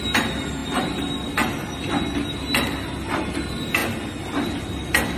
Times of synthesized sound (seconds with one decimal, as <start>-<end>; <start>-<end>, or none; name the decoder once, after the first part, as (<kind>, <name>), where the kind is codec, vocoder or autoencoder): none